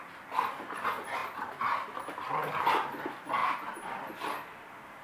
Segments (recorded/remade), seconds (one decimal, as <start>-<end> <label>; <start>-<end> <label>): 0.0-5.0 recorded